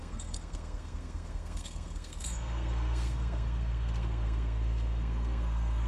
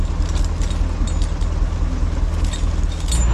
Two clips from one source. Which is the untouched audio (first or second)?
second